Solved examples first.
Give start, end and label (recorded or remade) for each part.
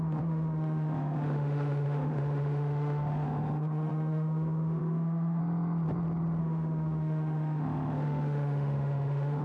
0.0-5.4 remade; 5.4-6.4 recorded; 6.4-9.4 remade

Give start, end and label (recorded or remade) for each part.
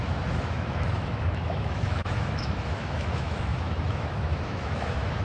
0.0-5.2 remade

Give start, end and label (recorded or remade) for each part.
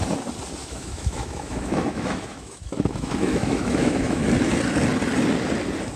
0.0-0.6 recorded; 0.6-4.2 remade; 4.2-6.0 recorded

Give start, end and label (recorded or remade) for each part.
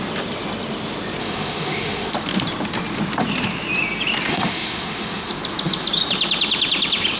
0.0-1.2 recorded; 1.2-2.1 remade; 2.1-4.3 recorded; 4.3-5.3 remade; 5.3-7.2 recorded